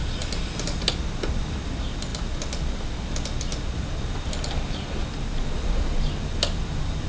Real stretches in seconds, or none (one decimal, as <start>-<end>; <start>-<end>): 0.0-7.1